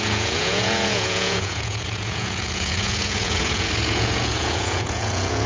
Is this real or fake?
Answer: fake